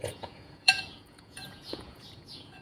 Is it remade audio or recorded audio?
remade